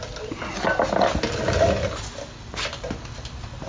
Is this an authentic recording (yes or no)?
yes